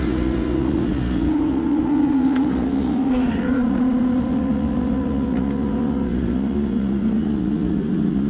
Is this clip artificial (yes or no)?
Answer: yes